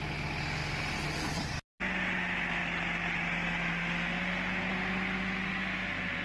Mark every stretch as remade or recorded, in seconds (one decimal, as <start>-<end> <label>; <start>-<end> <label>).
0.0-6.2 recorded